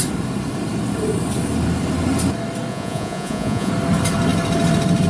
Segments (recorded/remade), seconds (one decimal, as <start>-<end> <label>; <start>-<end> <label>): 0.0-2.7 recorded; 2.7-3.7 remade; 3.7-5.1 recorded